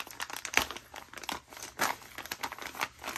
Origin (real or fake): real